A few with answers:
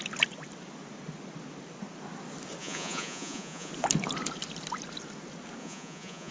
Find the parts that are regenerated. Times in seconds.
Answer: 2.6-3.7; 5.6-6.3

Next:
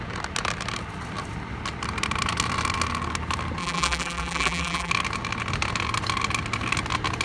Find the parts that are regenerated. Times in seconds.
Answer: 3.6-4.9

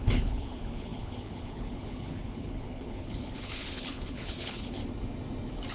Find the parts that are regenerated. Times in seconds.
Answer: 0.0-4.8

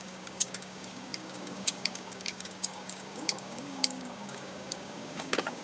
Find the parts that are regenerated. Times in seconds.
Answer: 0.0-5.6

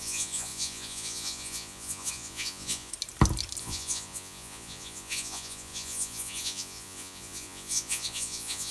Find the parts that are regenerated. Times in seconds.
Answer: 0.0-2.9; 3.6-8.7